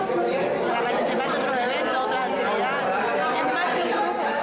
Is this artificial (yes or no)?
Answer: no